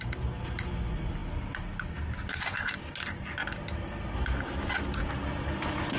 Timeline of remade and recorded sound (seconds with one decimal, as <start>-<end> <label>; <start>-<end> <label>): 0.0-6.0 recorded

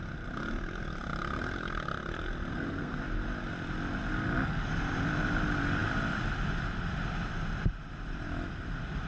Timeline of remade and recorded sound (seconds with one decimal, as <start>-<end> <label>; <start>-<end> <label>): 0.0-2.5 recorded; 2.5-3.0 remade; 3.0-9.1 recorded

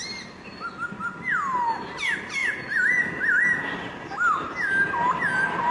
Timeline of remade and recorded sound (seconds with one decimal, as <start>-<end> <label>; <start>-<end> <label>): 0.0-5.7 recorded

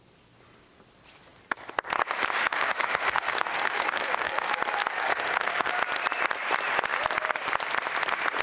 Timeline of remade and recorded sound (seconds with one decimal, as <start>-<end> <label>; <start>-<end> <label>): 0.0-2.5 recorded; 2.5-4.5 remade; 4.5-5.1 recorded; 5.1-5.7 remade; 5.7-8.4 recorded

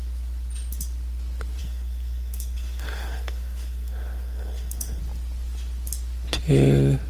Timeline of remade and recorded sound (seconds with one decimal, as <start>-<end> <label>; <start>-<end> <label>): 0.0-1.6 recorded; 1.6-5.0 remade; 5.0-7.1 recorded

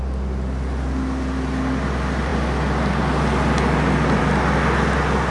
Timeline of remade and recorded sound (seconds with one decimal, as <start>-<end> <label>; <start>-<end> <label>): 0.0-5.3 recorded

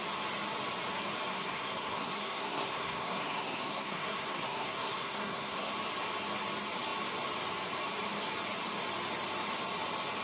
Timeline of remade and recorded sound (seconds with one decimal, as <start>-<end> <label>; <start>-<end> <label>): 0.0-1.3 recorded; 1.3-5.7 remade; 5.7-10.2 recorded